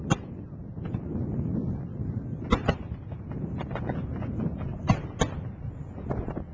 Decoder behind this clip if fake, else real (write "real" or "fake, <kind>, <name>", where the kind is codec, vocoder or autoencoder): real